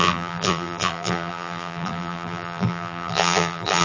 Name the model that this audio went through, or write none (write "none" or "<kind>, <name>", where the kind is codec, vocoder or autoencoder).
vocoder, BigVGAN v2